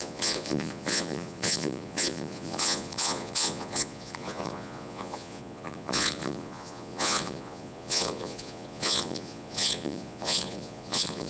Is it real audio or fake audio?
fake